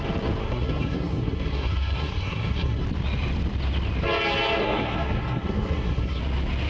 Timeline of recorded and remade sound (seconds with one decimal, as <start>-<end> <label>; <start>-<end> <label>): 0.0-0.4 recorded; 0.4-2.8 remade; 2.8-4.6 recorded; 4.6-6.2 remade; 6.2-6.7 recorded